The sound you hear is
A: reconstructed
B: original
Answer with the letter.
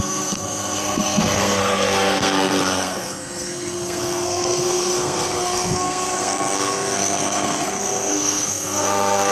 A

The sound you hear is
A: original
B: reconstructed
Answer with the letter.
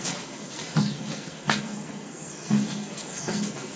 B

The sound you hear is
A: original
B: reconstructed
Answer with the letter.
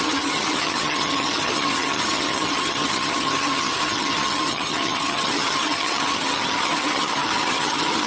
B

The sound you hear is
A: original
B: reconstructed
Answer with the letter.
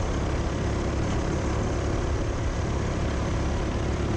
A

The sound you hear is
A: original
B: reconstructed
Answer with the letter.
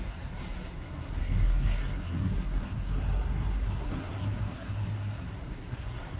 B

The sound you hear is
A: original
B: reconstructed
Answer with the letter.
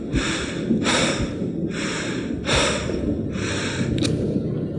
A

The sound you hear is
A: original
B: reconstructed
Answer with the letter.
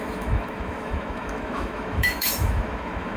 B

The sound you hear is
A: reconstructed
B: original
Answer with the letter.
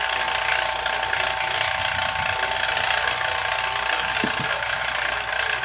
B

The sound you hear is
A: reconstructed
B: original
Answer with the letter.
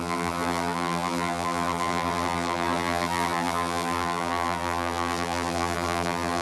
A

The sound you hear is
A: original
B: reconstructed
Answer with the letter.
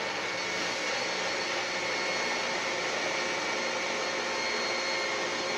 A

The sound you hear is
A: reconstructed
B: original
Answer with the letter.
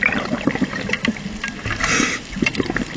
B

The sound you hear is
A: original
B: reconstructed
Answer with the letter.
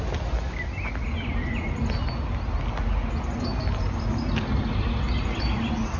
A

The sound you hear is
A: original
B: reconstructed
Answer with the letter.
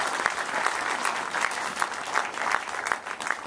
A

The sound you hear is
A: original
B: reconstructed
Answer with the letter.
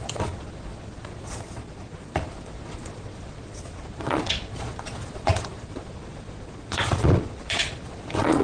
B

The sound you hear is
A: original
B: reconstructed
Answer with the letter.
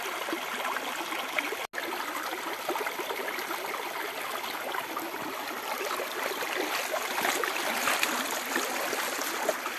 A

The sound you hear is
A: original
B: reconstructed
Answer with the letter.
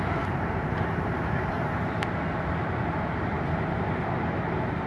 B